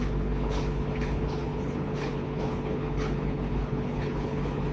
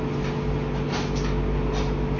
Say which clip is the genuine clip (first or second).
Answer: second